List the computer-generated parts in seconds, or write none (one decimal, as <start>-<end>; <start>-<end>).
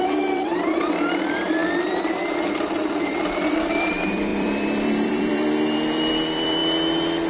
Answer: 0.0-6.6